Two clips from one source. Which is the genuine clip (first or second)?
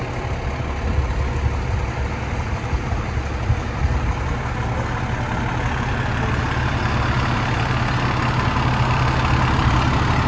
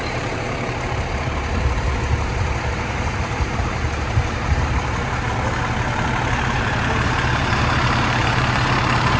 first